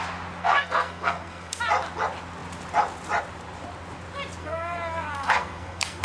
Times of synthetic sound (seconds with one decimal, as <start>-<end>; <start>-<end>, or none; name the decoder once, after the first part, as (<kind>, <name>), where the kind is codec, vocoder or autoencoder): 0.4-1.6 (codec, SNAC); 4.4-6.0